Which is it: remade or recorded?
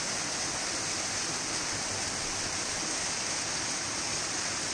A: recorded